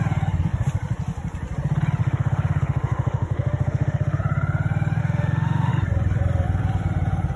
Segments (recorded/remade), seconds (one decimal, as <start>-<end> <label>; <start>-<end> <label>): 0.0-2.0 recorded; 2.0-4.2 remade; 4.2-5.0 recorded; 5.0-5.7 remade; 5.7-7.4 recorded